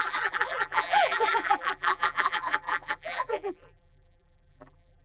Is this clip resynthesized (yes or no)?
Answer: yes